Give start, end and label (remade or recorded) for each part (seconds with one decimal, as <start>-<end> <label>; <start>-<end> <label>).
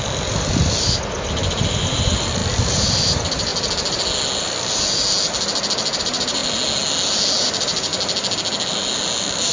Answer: 0.0-2.4 remade; 2.4-3.0 recorded; 3.0-3.5 remade; 3.5-6.0 recorded; 6.0-6.4 remade; 6.4-7.4 recorded; 7.4-7.9 remade; 7.9-9.5 recorded